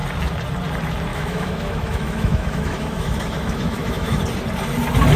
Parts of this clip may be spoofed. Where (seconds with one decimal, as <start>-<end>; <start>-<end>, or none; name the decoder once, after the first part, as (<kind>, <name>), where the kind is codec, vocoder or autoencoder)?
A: 1.1-4.2 (autoencoder, DAC-VAE)